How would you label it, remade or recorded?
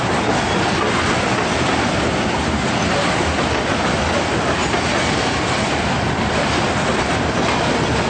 recorded